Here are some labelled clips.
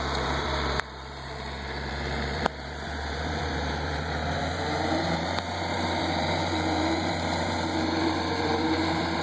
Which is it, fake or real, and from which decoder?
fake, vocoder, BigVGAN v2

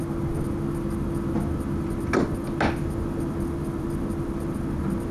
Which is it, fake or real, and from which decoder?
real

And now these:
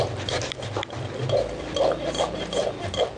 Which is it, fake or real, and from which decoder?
real